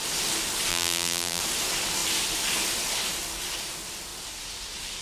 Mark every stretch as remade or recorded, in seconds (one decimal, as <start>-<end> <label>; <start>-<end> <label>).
0.0-0.7 recorded; 0.7-1.4 remade; 1.4-5.0 recorded